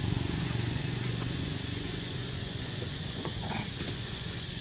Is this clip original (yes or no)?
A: no